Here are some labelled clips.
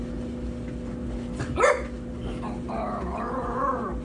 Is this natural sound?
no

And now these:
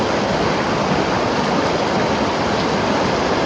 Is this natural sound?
yes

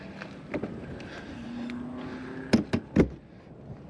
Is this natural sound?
yes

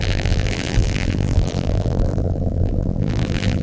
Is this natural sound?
no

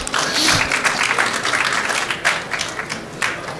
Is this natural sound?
yes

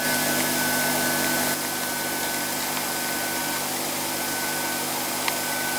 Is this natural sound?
yes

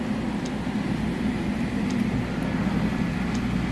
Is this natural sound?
yes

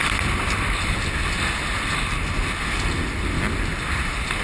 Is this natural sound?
yes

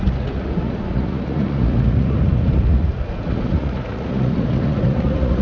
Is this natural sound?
no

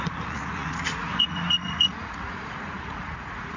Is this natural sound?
no